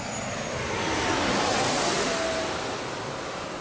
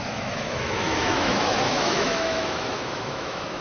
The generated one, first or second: second